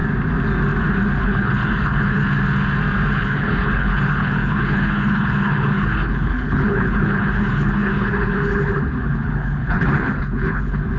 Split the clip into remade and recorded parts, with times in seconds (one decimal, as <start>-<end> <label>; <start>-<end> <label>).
0.0-1.2 recorded; 1.2-2.2 remade; 2.2-3.1 recorded; 3.1-11.0 remade